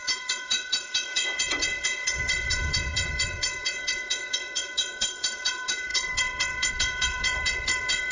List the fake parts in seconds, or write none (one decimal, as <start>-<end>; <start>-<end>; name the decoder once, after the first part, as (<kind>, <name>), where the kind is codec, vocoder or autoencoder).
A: 0.0-8.1 (vocoder, WaveNeXt)